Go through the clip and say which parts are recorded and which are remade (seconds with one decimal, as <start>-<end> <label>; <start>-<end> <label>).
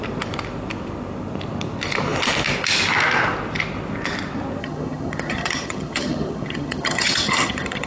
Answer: 0.0-4.6 recorded; 4.6-7.9 remade